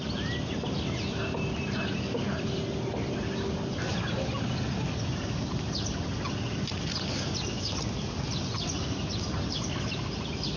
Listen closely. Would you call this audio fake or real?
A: real